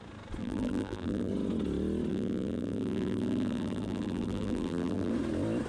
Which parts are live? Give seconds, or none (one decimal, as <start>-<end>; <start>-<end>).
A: 0.0-0.4; 1.3-2.1; 5.1-5.7